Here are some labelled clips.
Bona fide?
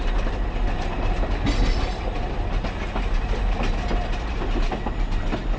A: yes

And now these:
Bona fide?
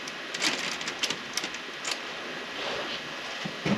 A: yes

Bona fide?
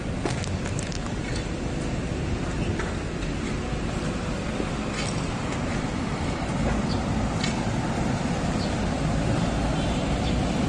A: yes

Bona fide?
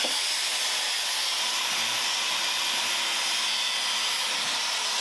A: yes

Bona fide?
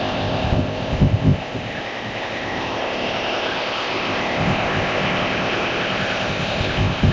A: no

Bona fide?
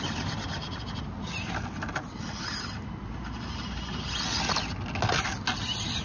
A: yes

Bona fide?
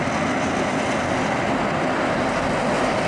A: yes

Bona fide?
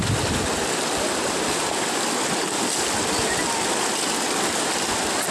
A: yes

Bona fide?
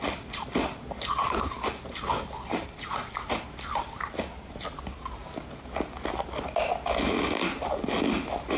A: yes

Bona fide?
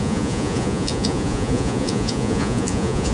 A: no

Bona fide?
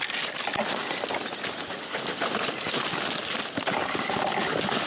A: yes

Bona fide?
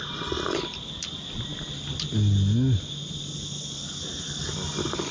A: yes